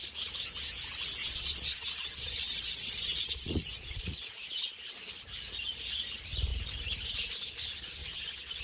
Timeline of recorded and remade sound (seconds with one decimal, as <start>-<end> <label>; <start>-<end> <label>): 0.0-1.2 recorded; 1.2-4.4 remade; 4.4-8.0 recorded; 8.0-8.6 remade